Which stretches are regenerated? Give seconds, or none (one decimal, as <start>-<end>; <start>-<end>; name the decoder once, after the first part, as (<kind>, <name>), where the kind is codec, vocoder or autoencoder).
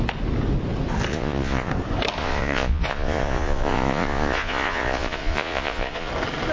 1.1-1.7 (vocoder, Vocos); 2.2-6.1